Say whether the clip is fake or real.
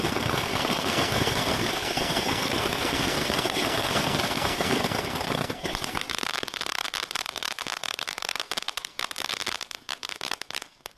fake